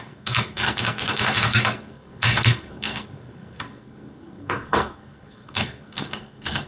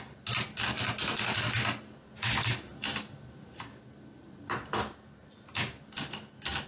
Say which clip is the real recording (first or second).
second